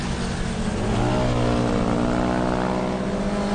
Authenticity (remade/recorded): recorded